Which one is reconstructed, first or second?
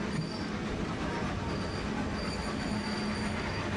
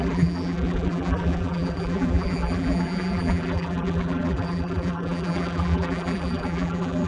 second